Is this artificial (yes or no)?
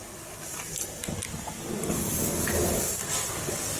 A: no